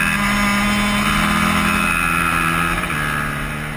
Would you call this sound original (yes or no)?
yes